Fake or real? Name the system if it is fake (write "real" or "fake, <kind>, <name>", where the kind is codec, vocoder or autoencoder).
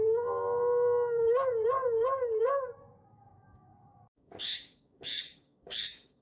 fake, codec, DAC